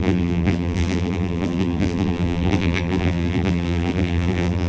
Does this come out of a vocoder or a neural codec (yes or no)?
yes